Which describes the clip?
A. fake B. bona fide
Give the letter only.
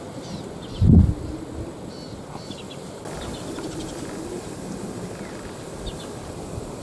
B